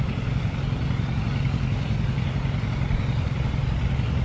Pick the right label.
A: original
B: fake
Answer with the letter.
A